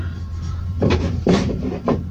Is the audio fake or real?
fake